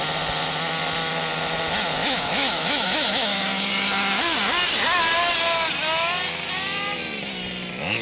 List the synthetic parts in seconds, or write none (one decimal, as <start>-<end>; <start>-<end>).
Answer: 2.0-3.4